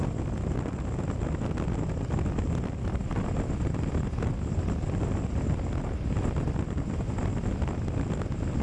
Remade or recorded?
recorded